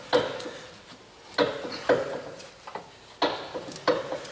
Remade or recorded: recorded